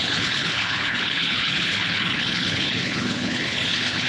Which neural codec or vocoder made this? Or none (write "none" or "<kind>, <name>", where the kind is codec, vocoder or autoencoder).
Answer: codec, HILCodec